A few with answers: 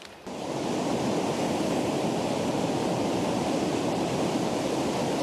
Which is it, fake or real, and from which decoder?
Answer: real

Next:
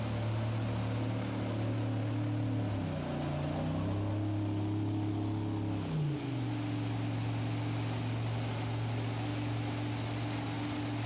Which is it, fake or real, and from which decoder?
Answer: real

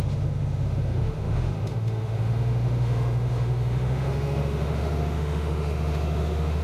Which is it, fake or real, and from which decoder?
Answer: fake, autoencoder, DAC-VAE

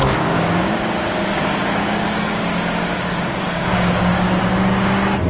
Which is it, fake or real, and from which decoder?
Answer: fake, codec, DAC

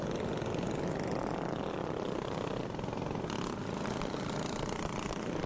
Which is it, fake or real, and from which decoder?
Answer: real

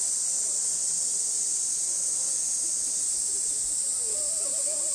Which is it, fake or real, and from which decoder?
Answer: real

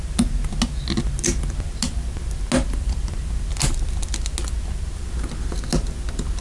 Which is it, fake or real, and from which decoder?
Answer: real